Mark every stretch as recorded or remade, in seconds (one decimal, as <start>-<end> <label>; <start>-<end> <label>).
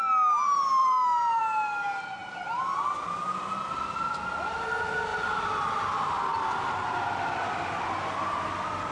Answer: 0.0-0.8 recorded; 0.8-1.4 remade; 1.4-2.2 recorded; 2.2-2.8 remade; 2.8-5.1 recorded; 5.1-6.1 remade; 6.1-8.9 recorded